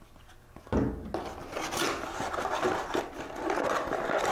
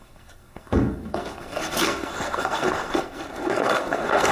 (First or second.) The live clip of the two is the first